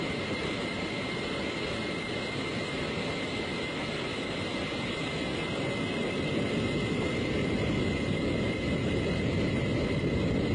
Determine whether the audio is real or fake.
real